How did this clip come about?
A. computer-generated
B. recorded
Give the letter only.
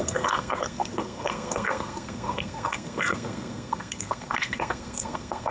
A